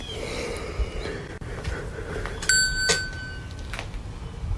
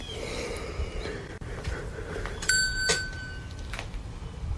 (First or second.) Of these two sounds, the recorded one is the first